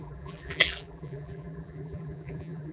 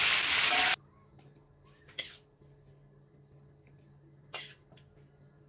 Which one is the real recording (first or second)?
second